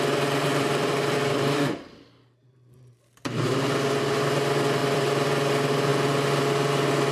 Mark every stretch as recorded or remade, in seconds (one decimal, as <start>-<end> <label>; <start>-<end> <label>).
0.0-0.4 recorded; 0.4-2.5 remade; 2.5-4.8 recorded; 4.8-5.3 remade; 5.3-7.1 recorded